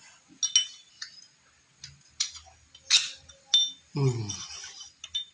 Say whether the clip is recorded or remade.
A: recorded